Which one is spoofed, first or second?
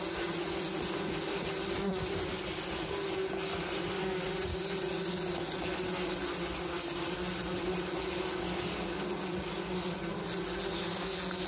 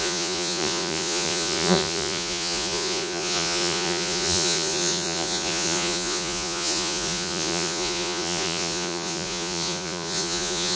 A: second